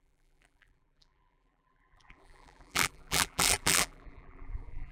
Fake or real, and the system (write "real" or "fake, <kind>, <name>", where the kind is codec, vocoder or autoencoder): fake, vocoder, BigVGAN v2